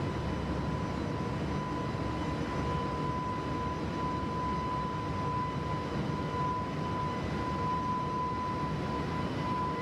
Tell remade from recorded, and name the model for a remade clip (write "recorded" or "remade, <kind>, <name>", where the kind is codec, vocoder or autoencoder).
recorded